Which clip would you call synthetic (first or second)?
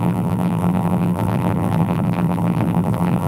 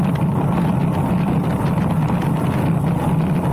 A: first